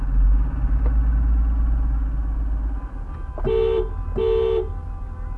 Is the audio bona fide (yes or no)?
yes